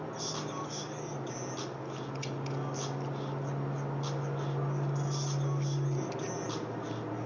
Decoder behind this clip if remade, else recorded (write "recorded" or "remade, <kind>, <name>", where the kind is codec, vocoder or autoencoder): recorded